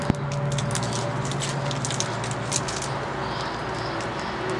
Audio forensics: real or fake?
real